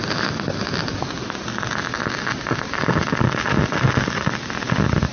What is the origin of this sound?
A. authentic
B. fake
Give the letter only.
A